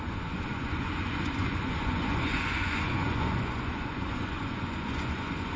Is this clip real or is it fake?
fake